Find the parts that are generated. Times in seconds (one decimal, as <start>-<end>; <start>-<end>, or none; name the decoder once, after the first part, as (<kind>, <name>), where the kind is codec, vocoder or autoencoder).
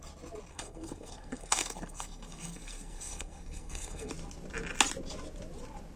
0.5-4.1 (codec, SNAC)